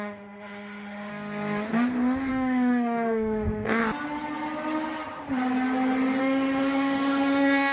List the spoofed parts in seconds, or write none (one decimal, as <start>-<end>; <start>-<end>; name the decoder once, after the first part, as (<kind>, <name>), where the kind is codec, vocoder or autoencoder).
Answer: 0.0-1.1 (autoencoder, DAC-VAE); 2.3-3.8; 6.2-7.7